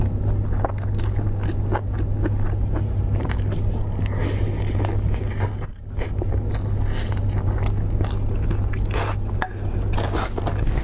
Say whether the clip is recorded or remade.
recorded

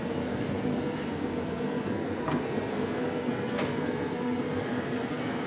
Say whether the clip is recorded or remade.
remade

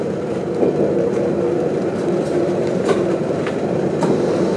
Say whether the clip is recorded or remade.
remade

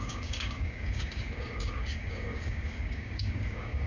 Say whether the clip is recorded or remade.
remade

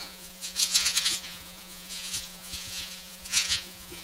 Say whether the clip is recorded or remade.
remade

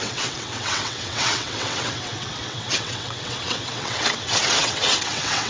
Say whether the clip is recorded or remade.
remade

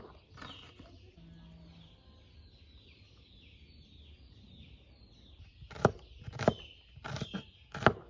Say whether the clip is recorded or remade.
recorded